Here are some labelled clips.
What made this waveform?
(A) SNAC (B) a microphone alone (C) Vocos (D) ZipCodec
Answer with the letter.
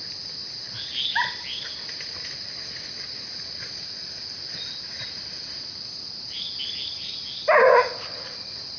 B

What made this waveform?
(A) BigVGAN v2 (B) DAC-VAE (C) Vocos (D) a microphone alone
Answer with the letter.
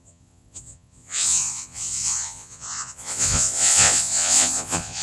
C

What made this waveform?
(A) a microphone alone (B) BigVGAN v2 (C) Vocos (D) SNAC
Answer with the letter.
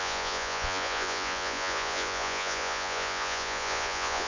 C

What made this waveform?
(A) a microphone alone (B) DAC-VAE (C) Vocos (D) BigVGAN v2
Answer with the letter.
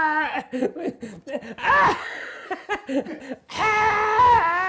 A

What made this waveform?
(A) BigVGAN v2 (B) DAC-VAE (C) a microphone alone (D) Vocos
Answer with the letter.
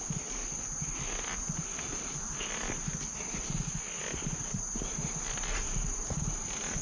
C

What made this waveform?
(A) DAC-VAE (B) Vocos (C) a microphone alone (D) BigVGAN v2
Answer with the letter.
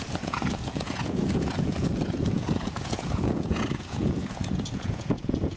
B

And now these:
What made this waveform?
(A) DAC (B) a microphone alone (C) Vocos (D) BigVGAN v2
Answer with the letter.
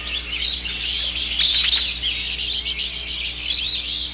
B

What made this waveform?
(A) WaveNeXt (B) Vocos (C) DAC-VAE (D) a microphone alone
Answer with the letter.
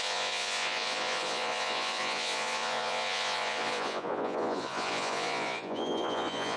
B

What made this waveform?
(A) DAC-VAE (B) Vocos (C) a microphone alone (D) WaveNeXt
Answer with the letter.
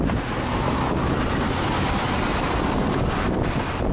C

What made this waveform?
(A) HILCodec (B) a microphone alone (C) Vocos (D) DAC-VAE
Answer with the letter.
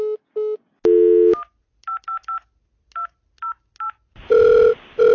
B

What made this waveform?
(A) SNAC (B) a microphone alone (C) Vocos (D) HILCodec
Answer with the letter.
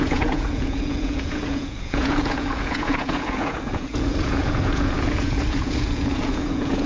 C